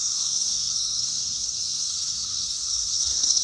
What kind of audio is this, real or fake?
fake